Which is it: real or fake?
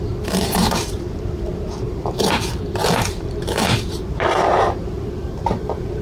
fake